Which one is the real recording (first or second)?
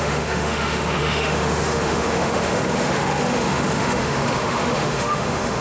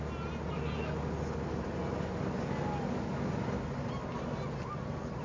second